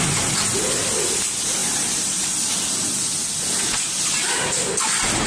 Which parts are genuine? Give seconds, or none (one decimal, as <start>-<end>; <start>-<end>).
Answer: 0.0-5.3